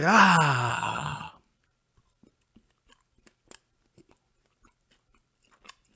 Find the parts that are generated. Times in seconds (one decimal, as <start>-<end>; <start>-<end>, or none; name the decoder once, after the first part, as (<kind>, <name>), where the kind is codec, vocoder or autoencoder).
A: 0.7-1.3 (vocoder, HiFi-GAN)